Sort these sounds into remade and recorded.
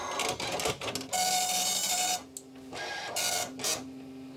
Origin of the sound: recorded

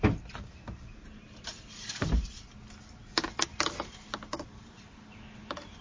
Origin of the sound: recorded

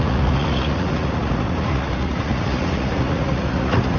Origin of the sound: remade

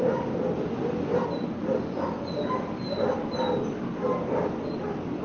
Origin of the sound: recorded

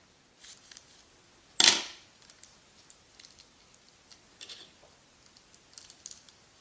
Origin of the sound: recorded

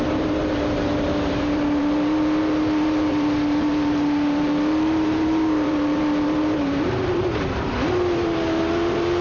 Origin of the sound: remade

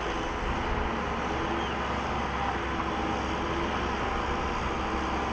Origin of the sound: recorded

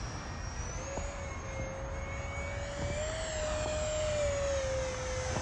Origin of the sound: recorded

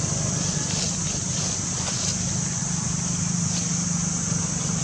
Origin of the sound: recorded